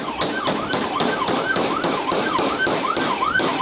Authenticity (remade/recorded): remade